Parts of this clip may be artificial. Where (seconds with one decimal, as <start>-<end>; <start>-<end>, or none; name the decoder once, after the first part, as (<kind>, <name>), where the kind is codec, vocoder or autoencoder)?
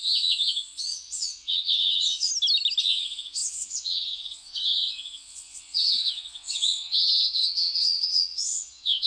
0.0-2.3 (vocoder, WaveNeXt); 2.8-9.1